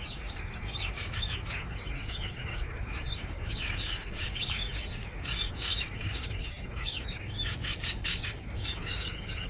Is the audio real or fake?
fake